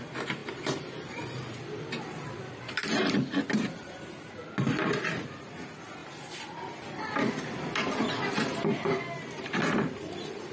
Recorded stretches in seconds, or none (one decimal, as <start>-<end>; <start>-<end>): 0.0-0.4; 2.8-10.5